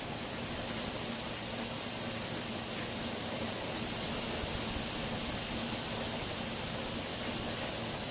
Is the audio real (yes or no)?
yes